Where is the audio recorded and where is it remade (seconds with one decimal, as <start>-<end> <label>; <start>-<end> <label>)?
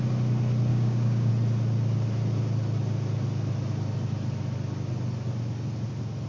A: 0.0-0.7 recorded; 0.7-1.3 remade; 1.3-6.3 recorded